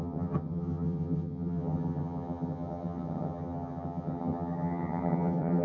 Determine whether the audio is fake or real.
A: fake